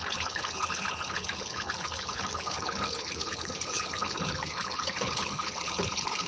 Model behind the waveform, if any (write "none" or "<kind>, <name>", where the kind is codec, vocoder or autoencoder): codec, HILCodec